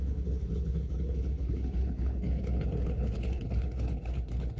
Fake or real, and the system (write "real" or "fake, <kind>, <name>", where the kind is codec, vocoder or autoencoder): fake, codec, HILCodec